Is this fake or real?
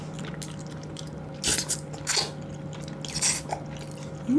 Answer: real